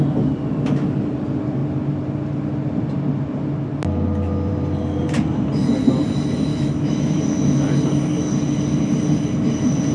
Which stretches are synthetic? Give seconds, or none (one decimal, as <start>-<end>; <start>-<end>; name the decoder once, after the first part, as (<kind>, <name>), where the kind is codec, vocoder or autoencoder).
6.5-7.2 (autoencoder, DAC-VAE)